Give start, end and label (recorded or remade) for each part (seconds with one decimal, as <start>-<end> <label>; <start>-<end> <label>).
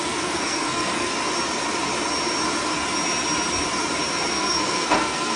0.0-1.1 remade; 1.1-4.3 recorded; 4.3-5.4 remade